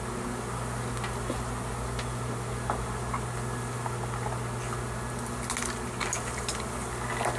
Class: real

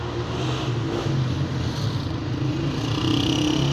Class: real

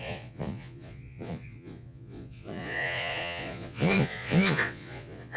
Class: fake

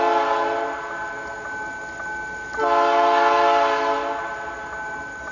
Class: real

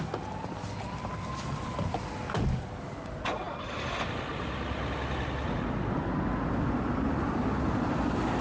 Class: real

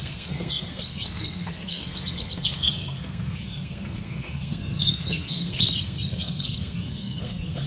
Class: fake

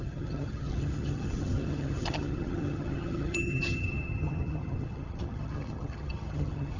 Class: fake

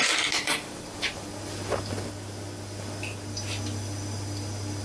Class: real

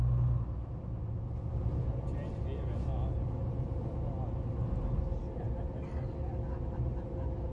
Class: real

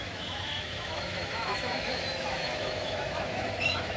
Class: fake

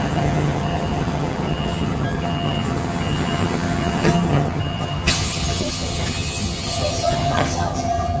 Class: fake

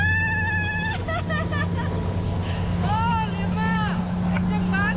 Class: real